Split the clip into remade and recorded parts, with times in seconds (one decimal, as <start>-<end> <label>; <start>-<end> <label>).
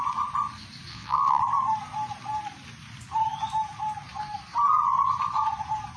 0.0-0.9 recorded; 0.9-1.4 remade; 1.4-6.0 recorded